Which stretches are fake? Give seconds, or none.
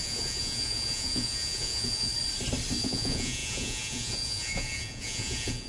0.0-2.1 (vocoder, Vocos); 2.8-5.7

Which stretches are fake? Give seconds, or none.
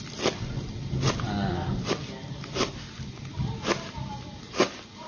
none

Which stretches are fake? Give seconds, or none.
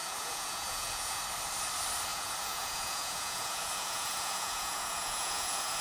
0.0-1.2 (vocoder, Vocos); 2.1-5.8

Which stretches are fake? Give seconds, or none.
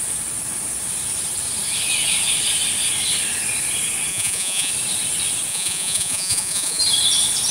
4.1-4.7 (vocoder, Vocos); 5.5-6.8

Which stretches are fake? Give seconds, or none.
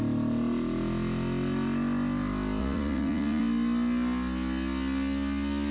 2.6-3.4 (vocoder, Vocos)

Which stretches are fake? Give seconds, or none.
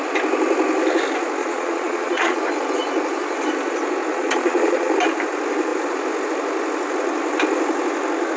1.4-2.4 (vocoder, Vocos); 4.1-4.9